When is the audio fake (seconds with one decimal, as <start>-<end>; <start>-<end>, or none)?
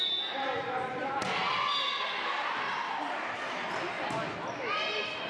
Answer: none